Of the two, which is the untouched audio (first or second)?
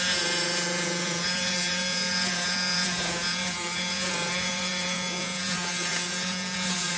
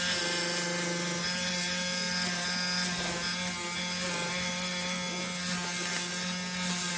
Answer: second